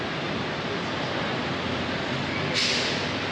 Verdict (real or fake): real